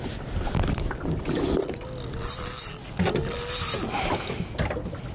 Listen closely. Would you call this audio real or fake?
real